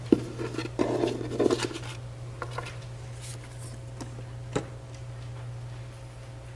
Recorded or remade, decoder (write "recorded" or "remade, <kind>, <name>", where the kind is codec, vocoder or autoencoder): recorded